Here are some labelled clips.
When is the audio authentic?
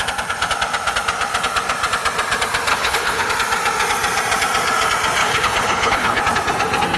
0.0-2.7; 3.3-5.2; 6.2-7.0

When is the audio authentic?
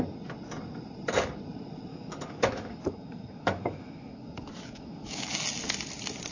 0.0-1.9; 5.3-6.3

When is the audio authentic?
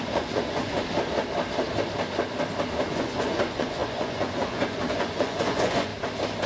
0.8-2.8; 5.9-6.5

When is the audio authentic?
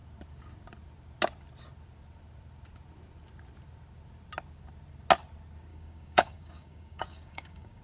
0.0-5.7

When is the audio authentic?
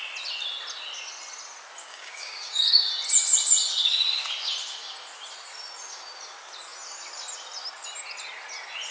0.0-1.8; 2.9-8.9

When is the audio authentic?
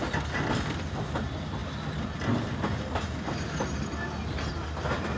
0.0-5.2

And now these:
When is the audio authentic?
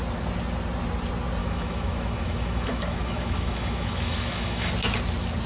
0.0-1.4; 4.7-5.5